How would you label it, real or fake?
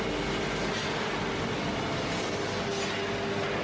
real